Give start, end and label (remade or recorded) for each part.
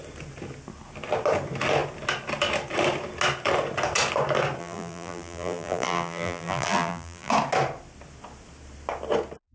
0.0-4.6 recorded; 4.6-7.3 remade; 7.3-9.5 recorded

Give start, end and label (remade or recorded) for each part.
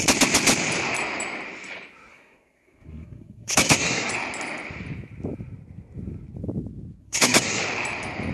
0.0-2.1 recorded; 2.1-4.1 remade; 4.1-7.0 recorded; 7.0-7.6 remade; 7.6-8.3 recorded